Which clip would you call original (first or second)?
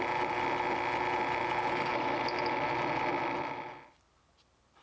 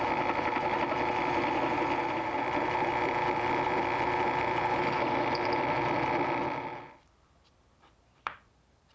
first